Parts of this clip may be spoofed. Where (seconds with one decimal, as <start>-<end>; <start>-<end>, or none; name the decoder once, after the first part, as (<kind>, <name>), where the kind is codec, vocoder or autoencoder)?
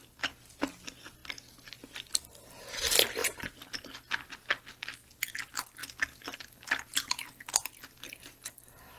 none